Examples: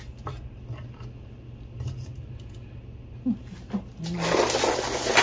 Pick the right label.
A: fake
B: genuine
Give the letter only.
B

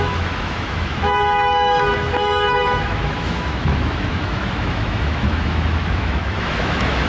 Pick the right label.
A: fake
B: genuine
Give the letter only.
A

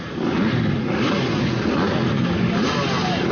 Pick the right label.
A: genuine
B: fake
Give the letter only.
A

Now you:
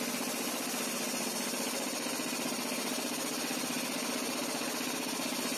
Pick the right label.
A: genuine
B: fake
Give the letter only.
A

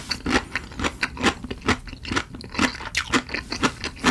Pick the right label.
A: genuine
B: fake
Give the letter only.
A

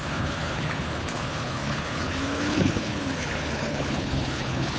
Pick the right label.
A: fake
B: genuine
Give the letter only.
A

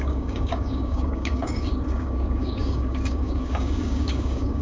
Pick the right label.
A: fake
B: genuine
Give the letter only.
A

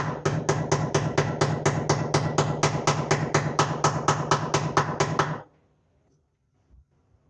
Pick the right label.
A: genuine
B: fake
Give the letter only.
A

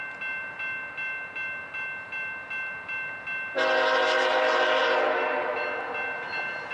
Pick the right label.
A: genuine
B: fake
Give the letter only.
A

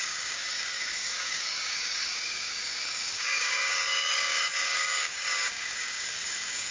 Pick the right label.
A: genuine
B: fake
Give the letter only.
B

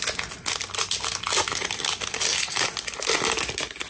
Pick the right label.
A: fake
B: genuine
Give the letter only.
B